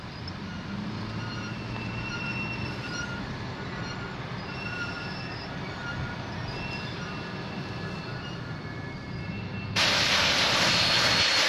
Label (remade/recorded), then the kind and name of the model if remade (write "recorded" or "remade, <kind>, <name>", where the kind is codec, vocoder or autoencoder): recorded